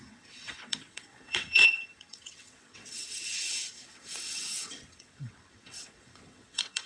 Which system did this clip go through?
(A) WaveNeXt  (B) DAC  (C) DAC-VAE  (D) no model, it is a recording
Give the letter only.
A